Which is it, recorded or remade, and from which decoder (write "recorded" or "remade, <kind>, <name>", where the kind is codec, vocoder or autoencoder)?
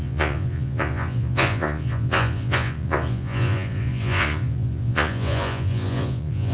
remade, vocoder, Vocos